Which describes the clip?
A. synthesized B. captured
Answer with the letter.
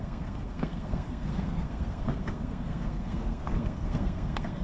A